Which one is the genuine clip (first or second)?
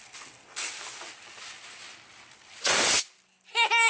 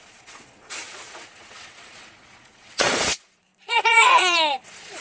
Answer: first